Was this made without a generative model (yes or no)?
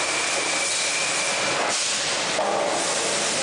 yes